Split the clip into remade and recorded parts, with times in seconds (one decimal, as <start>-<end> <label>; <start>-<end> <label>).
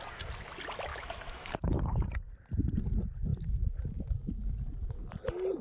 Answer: 0.0-0.9 recorded; 0.9-1.8 remade; 1.8-5.6 recorded